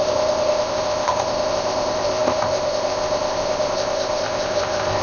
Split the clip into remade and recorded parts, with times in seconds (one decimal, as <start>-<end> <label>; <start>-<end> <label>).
0.0-5.0 remade

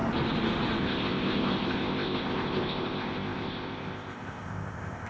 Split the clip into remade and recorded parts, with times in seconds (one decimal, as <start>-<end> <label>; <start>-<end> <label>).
0.0-0.8 recorded; 0.8-5.1 remade

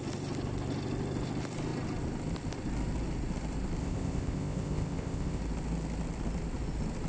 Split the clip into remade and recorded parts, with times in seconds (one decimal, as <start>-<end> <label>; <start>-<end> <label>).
0.0-3.8 recorded; 3.8-5.4 remade; 5.4-7.1 recorded